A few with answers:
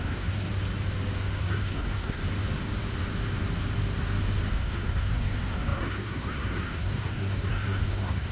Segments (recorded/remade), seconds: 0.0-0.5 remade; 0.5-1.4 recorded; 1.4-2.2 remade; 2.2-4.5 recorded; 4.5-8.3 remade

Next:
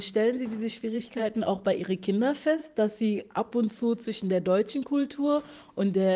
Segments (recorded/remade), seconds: 0.0-0.7 recorded; 0.7-1.6 remade; 1.6-2.6 recorded; 2.6-6.2 remade

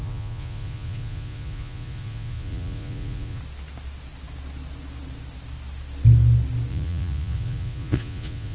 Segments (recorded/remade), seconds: 0.0-3.4 remade; 3.4-6.7 recorded; 6.7-8.5 remade

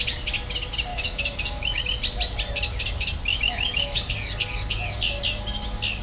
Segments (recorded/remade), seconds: 0.0-0.9 recorded; 0.9-1.8 remade; 1.8-3.3 recorded; 3.3-4.1 remade; 4.1-6.0 recorded

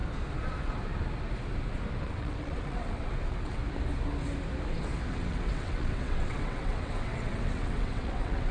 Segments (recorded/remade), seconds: 0.0-2.0 recorded; 2.0-3.6 remade; 3.6-5.1 recorded; 5.1-8.5 remade